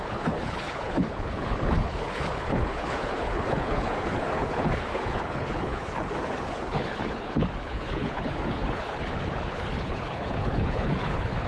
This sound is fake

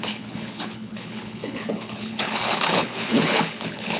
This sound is fake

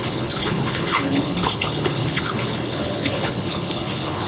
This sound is fake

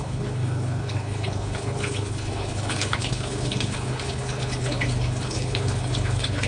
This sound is fake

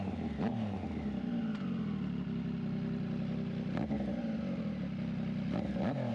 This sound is real